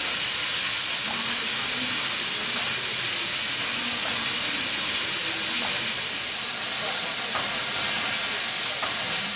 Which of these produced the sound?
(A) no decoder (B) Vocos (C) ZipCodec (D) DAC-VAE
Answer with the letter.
A